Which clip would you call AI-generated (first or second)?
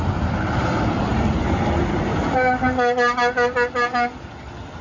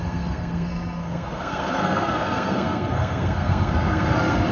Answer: second